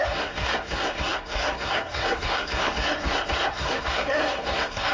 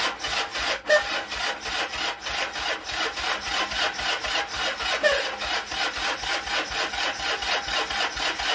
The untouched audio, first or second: second